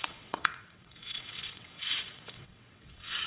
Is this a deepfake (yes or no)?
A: yes